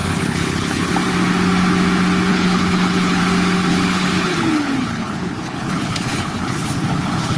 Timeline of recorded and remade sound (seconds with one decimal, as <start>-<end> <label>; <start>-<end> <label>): 0.0-0.9 remade; 0.9-2.3 recorded; 2.3-3.2 remade; 3.2-3.7 recorded; 3.7-7.4 remade